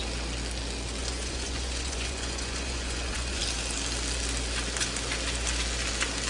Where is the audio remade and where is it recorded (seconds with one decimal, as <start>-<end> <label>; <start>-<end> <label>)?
0.0-1.0 recorded; 1.0-3.4 remade; 3.4-6.3 recorded